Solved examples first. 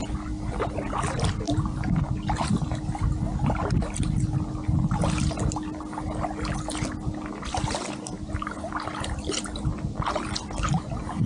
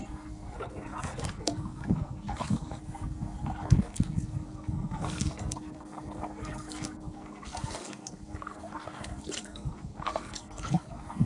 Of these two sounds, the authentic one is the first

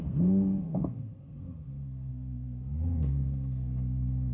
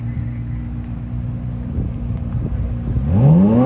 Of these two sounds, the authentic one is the second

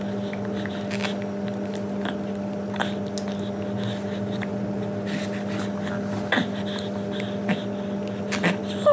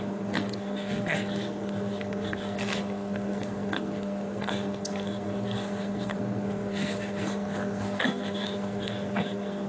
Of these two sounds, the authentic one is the first